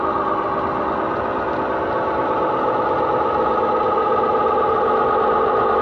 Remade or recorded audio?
recorded